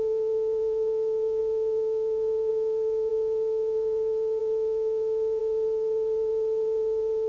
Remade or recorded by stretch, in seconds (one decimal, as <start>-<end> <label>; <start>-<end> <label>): 0.0-5.4 remade; 5.4-7.3 recorded